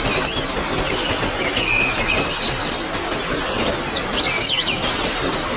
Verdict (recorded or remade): recorded